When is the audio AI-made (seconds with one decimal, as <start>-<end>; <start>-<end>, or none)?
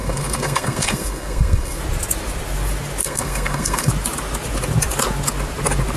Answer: 0.0-1.8; 3.0-3.9